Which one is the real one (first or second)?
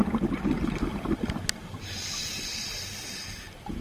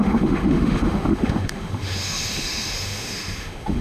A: first